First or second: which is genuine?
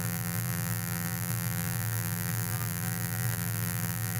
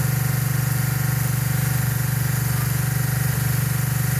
second